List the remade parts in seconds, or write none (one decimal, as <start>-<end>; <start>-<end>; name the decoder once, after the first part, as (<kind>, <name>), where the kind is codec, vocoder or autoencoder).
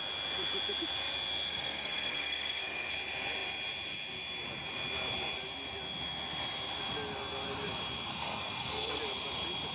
1.5-2.9 (codec, SNAC); 8.1-9.0